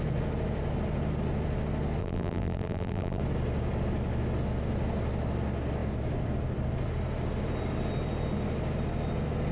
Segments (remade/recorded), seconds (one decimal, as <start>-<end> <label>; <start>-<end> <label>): 0.0-2.0 recorded; 2.0-3.2 remade; 3.2-9.5 recorded